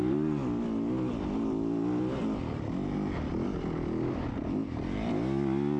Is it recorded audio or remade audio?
recorded